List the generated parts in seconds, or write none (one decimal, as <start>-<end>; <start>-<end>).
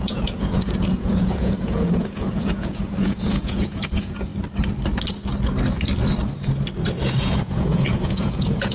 0.0-4.3; 7.2-8.7